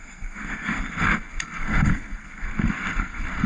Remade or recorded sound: remade